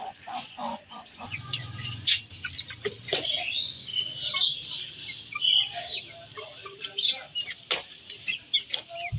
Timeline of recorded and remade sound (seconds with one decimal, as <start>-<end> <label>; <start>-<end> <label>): 0.0-2.1 remade; 2.1-3.0 recorded; 3.0-3.9 remade; 3.9-9.2 recorded